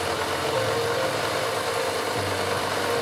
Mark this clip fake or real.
real